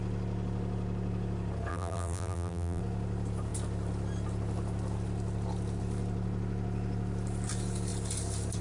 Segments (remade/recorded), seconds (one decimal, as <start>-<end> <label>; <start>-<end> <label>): 0.0-1.7 recorded; 1.7-2.8 remade; 2.8-8.6 recorded